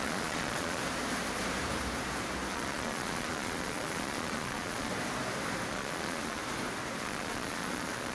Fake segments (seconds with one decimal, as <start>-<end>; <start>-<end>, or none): 0.0-0.8; 2.5-4.9; 5.7-6.4; 7.0-8.1